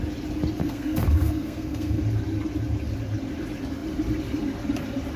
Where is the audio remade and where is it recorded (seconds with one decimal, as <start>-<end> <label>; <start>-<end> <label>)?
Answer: 0.0-0.6 recorded; 0.6-2.0 remade; 2.0-5.2 recorded